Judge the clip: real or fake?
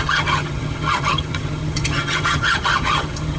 fake